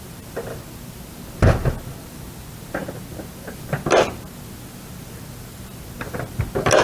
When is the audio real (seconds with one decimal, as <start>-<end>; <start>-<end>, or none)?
0.0-6.8